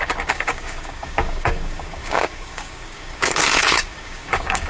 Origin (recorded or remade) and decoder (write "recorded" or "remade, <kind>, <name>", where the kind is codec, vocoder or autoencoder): remade, codec, DAC